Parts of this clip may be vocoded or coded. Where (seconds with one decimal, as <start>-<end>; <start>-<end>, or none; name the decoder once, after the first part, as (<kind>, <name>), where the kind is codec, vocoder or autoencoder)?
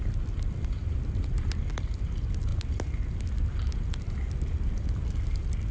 none